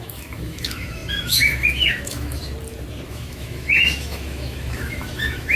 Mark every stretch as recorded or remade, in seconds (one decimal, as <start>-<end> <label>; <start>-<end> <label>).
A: 0.0-2.4 remade; 2.4-3.1 recorded; 3.1-5.6 remade